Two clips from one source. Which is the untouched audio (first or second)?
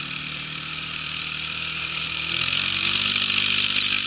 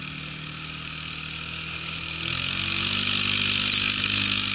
second